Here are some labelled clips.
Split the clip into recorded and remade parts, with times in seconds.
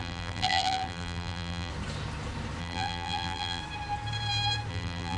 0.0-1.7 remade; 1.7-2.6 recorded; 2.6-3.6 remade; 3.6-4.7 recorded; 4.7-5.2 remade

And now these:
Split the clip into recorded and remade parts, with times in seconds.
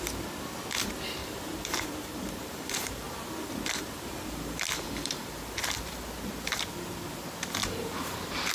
0.0-1.2 recorded; 1.2-6.0 remade; 6.0-7.6 recorded; 7.6-8.5 remade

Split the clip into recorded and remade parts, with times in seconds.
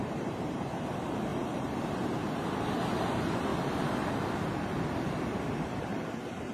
0.0-3.5 remade; 3.5-5.4 recorded; 5.4-6.5 remade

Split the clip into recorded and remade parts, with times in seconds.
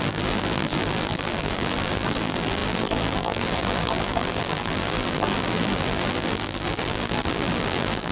0.0-8.1 remade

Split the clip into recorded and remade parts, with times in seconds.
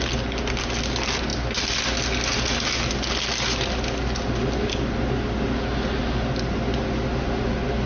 0.0-7.9 recorded